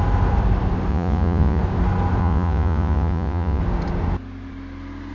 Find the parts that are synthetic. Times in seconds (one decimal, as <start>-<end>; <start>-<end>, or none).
0.9-1.6; 2.2-3.6